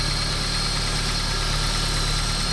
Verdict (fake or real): real